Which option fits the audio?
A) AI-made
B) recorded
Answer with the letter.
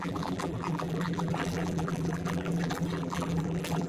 A